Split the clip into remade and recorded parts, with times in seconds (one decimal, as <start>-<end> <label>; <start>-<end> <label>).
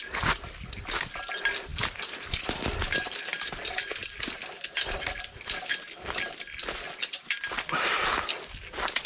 0.0-1.7 recorded; 1.7-2.3 remade; 2.3-9.1 recorded